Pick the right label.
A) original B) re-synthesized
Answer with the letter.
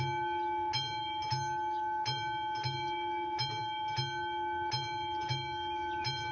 A